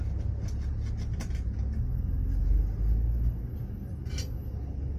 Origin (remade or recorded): recorded